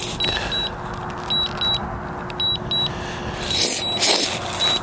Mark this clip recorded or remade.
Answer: recorded